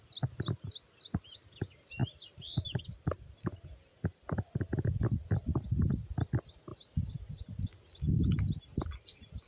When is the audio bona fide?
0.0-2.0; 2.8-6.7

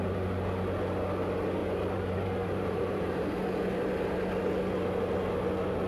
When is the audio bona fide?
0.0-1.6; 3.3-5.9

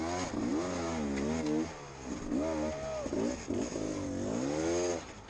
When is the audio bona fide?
0.0-5.3

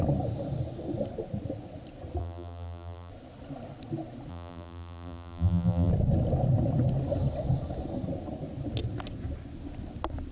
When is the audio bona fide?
0.0-2.2; 3.1-4.3; 5.9-10.3